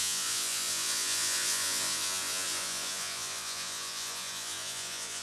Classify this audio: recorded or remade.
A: remade